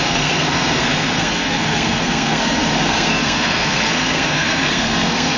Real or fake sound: fake